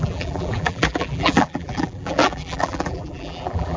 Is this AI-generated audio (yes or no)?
yes